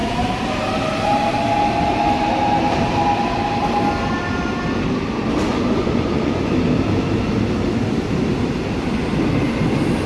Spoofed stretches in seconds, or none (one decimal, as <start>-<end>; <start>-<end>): 5.5-6.5